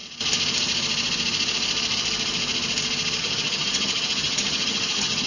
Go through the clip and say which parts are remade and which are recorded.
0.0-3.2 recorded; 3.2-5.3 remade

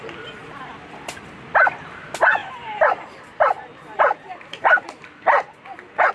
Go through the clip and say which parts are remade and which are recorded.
0.0-0.4 recorded; 0.4-1.2 remade; 1.2-2.4 recorded; 2.4-6.1 remade

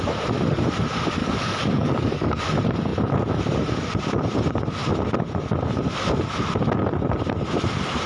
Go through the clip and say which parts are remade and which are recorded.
0.0-1.2 recorded; 1.2-2.4 remade; 2.4-8.1 recorded